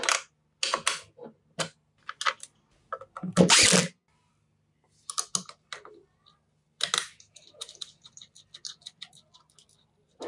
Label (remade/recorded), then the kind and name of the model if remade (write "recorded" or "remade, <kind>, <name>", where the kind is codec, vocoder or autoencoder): recorded